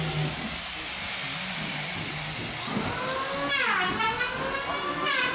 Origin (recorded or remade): recorded